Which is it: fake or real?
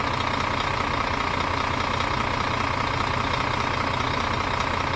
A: real